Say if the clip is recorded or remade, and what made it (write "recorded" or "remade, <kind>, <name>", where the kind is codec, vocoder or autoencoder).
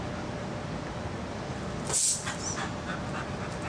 recorded